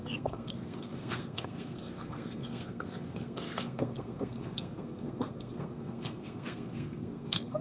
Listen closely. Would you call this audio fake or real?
fake